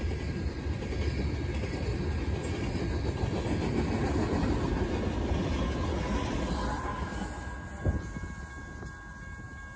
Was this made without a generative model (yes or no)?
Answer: yes